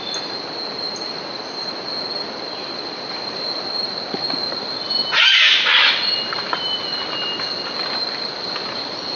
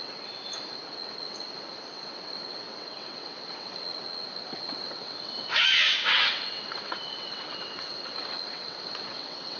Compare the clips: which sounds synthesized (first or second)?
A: second